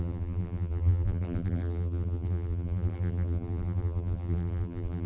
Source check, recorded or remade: remade